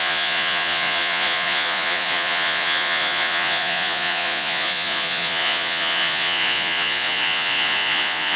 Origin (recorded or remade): remade